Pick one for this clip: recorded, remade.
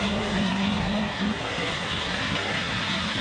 remade